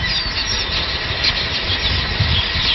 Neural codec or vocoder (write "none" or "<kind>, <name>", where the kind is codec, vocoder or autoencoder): none